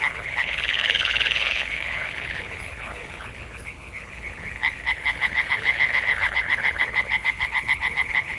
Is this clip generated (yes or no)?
yes